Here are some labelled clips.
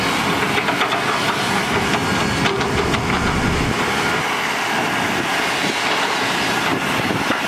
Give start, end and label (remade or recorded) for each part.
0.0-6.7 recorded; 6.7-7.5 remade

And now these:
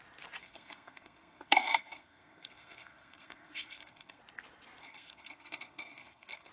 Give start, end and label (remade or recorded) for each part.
0.0-0.4 recorded; 0.4-4.2 remade; 4.2-4.8 recorded; 4.8-6.5 remade

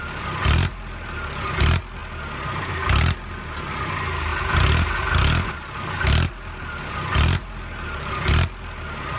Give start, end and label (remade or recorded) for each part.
0.0-9.2 recorded

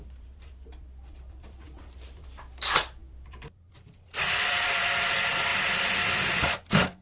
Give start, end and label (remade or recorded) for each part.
0.0-5.5 remade; 5.5-6.1 recorded; 6.1-7.0 remade